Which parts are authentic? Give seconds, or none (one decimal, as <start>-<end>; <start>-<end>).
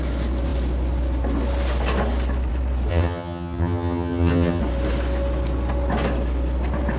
0.0-2.9; 4.6-7.0